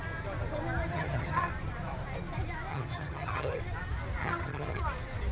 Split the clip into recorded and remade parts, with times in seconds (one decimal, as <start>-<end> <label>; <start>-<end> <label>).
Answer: 0.0-0.9 recorded; 0.9-1.5 remade; 1.5-2.7 recorded; 2.7-3.6 remade; 3.6-4.2 recorded; 4.2-4.8 remade; 4.8-5.3 recorded